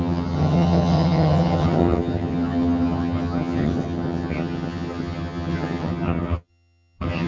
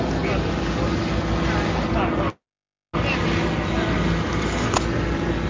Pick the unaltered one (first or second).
second